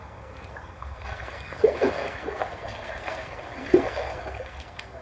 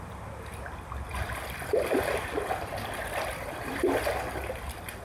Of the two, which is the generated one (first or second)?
first